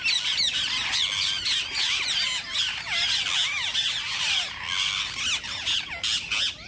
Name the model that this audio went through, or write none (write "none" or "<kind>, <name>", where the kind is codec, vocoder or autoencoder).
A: none